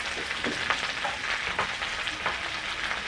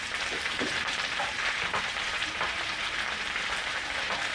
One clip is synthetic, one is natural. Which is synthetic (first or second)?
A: second